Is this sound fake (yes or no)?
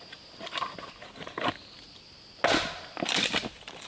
no